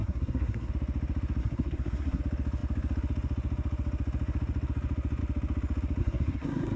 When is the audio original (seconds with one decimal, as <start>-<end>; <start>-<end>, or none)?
0.7-1.4; 2.2-6.0